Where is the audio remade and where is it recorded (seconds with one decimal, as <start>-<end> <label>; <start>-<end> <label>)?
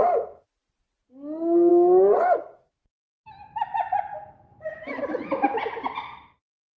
0.0-6.8 recorded